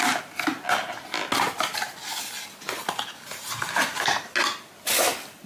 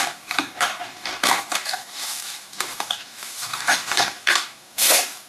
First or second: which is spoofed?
second